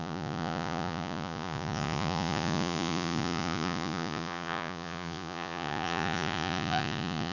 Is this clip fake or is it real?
fake